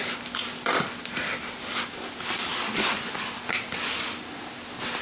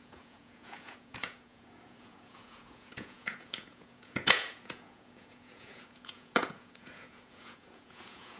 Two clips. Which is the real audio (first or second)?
first